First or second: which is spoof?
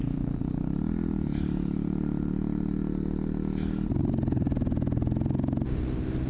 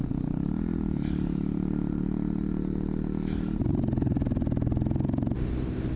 second